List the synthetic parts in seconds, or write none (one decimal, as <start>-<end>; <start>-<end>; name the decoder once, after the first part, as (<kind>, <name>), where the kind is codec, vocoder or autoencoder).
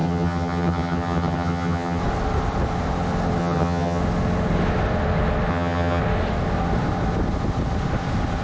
0.0-2.0 (vocoder, HiFi-GAN); 3.4-4.0; 5.5-6.0